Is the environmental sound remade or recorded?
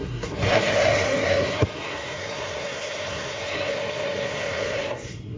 remade